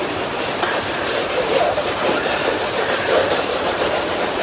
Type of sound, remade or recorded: remade